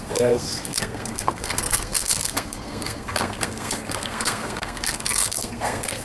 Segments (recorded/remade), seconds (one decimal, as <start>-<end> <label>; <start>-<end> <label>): 0.0-6.0 remade